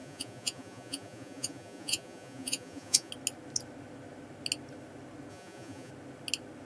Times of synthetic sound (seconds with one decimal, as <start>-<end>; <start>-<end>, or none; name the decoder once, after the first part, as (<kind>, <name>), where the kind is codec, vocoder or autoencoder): 0.0-3.1 (vocoder, Vocos); 5.3-5.9